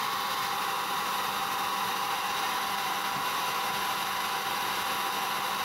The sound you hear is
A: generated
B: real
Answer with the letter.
B